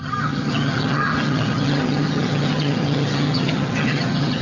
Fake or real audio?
fake